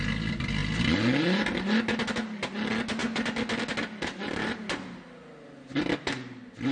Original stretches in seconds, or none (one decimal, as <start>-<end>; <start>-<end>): 0.0-6.7